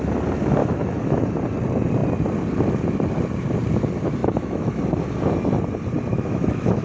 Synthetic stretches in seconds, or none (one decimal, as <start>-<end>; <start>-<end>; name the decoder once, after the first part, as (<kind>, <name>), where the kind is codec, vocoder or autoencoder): 0.6-1.3 (autoencoder, DAC-VAE); 4.2-4.8; 6.1-6.8